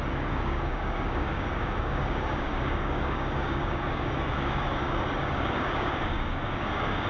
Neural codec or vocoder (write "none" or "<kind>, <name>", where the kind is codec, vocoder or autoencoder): codec, DAC